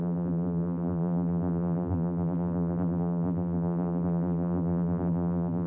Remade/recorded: remade